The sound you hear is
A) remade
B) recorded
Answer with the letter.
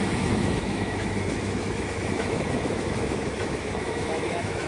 A